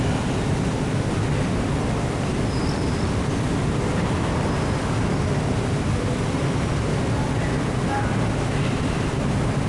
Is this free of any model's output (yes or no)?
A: yes